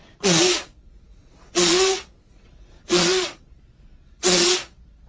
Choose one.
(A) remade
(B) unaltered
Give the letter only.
A